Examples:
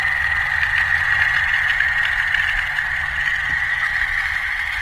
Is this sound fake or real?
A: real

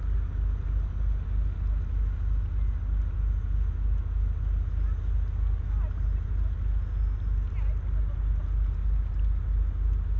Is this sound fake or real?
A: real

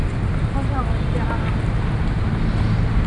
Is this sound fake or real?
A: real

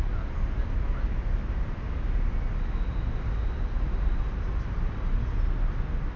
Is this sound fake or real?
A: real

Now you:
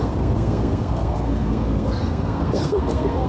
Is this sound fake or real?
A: fake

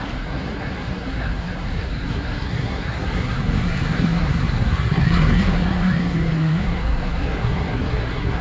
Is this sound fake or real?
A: fake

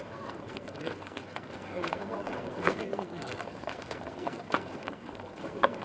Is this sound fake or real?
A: fake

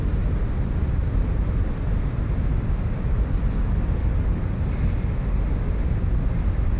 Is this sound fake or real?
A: real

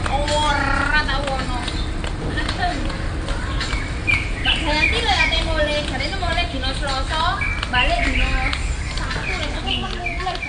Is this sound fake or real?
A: real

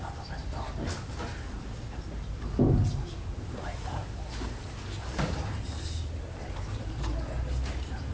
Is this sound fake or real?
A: real